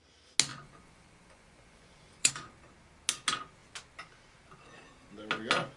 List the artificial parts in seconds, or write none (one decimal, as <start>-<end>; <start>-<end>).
0.5-2.3